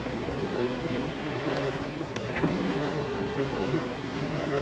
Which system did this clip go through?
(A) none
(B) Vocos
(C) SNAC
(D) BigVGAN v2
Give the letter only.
C